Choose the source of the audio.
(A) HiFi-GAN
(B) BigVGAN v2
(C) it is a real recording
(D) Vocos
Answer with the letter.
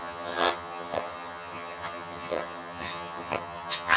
A